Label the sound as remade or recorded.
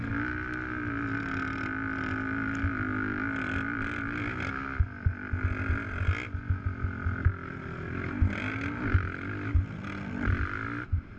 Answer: recorded